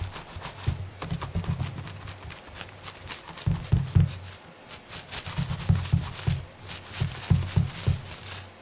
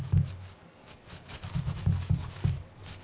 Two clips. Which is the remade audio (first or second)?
second